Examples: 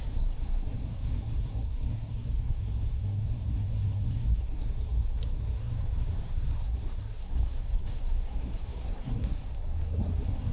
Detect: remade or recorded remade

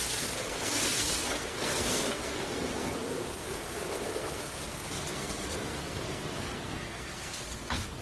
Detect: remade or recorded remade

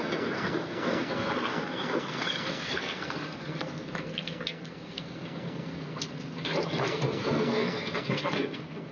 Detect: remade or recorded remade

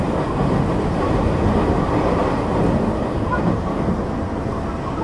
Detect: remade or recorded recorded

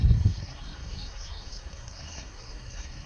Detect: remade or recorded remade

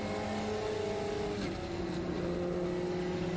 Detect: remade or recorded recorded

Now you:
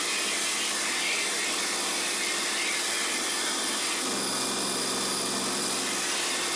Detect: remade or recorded recorded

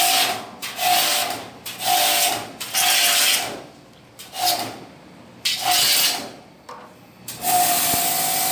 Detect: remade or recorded recorded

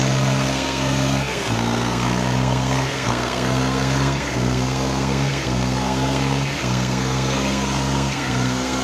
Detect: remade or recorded remade